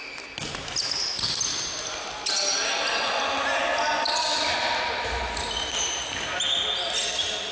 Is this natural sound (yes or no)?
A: yes